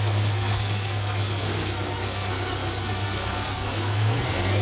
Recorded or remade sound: remade